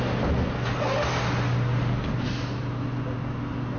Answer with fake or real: real